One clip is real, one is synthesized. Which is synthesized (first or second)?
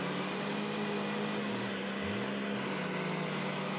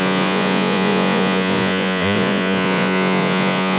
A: second